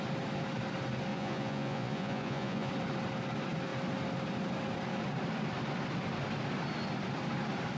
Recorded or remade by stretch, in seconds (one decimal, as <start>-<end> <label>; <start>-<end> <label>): 0.0-1.1 recorded; 1.1-2.7 remade; 2.7-7.8 recorded